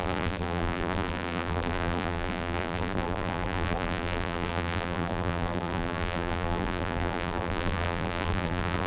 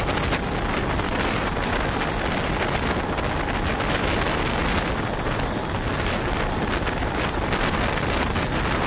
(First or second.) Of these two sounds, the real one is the second